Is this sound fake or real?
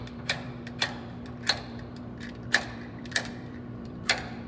fake